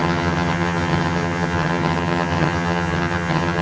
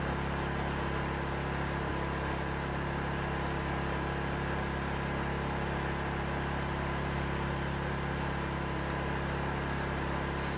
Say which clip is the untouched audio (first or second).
second